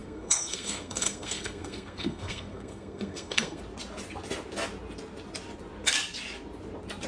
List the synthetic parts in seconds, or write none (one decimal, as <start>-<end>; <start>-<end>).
0.0-3.6